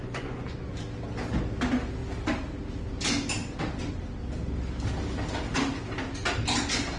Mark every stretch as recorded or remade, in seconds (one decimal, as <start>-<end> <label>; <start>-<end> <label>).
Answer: 0.0-0.7 remade; 0.7-7.0 recorded